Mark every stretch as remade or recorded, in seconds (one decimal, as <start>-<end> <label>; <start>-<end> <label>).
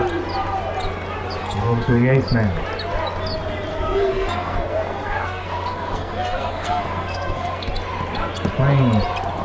0.0-1.4 recorded; 1.4-2.2 remade; 2.2-3.7 recorded; 3.7-7.7 remade; 7.7-9.4 recorded